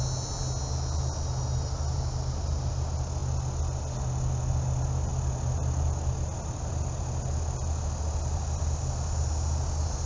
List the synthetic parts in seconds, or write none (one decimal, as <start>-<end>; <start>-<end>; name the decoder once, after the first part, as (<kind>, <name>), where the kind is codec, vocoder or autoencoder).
none